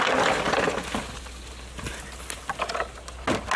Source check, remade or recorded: recorded